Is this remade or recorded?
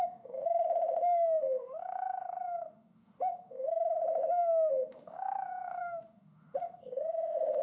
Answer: remade